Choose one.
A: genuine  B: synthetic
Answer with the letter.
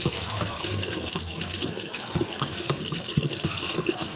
B